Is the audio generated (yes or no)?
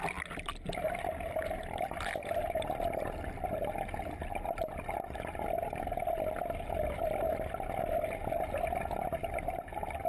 no